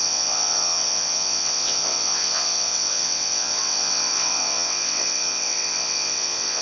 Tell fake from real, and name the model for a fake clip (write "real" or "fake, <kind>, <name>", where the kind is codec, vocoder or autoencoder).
fake, vocoder, WaveNeXt